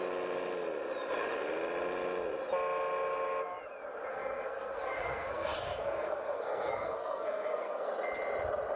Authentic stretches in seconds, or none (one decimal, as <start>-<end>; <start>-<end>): 0.0-4.1; 7.9-8.8